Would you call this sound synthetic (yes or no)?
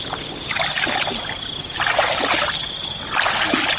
no